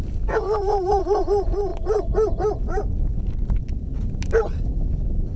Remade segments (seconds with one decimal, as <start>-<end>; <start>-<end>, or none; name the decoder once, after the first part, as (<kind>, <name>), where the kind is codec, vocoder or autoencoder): none